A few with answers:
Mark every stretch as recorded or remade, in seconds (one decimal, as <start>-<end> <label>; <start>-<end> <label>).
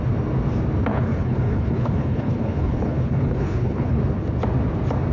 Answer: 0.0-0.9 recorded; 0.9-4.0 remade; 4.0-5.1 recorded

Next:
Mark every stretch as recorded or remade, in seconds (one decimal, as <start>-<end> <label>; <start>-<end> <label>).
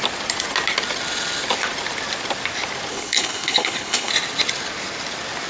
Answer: 0.0-2.9 recorded; 2.9-4.1 remade; 4.1-5.5 recorded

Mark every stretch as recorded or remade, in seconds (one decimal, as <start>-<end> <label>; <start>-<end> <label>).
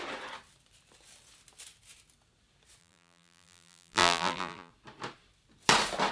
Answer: 0.0-2.8 recorded; 2.8-4.7 remade; 4.7-6.1 recorded